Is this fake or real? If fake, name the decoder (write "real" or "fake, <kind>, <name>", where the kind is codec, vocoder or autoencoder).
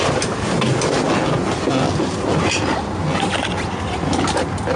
real